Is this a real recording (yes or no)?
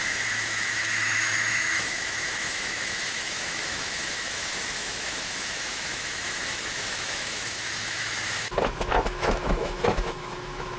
no